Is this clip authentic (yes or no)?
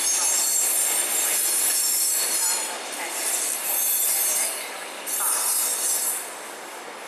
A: no